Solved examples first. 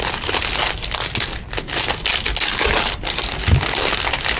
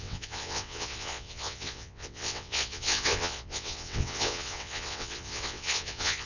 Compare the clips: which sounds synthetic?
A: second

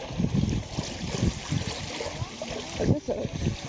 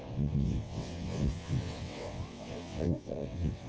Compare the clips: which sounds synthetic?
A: second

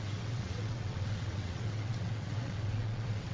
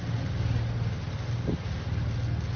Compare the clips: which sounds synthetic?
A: first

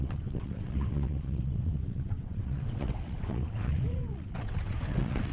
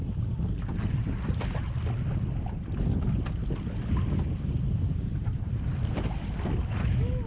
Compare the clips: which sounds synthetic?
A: first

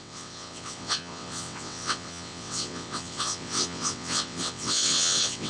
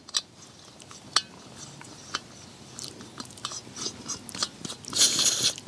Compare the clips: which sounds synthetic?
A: first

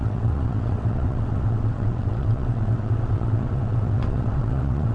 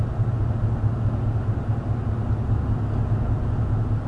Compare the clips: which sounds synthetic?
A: first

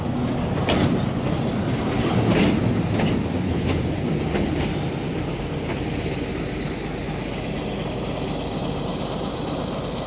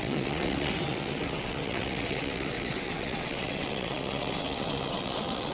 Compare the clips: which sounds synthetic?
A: second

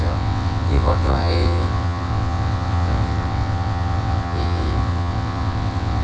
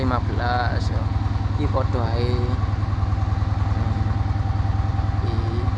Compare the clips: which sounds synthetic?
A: first